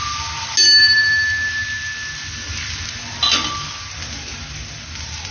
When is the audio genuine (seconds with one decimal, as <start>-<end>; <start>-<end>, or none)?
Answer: 0.0-5.3